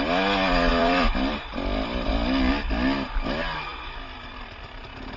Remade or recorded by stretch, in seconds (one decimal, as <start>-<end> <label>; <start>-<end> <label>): 0.0-0.7 recorded; 0.7-2.1 remade; 2.1-3.7 recorded; 3.7-4.6 remade; 4.6-5.2 recorded